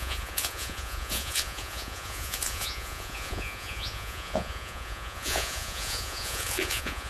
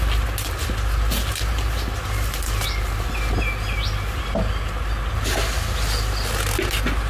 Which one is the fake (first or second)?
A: first